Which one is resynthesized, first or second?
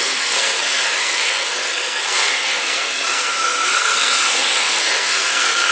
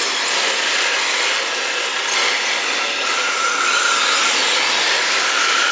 first